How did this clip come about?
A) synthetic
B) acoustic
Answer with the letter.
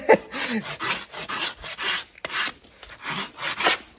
B